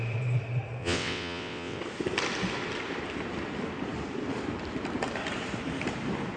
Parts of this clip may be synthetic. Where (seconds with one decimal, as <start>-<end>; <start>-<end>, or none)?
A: 0.8-1.8